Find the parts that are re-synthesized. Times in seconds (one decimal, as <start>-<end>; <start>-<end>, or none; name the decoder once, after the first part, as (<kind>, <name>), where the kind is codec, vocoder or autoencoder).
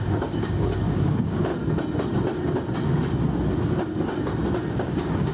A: 0.0-1.5 (codec, DAC); 4.7-5.3